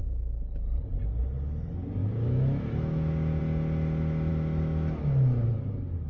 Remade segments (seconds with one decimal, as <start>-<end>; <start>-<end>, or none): 0.0-0.5; 2.0-3.4; 4.3-5.5